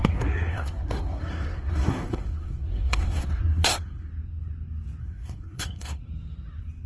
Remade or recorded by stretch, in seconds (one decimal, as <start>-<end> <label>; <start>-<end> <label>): 0.0-4.1 remade; 4.1-5.0 recorded; 5.0-6.0 remade; 6.0-6.9 recorded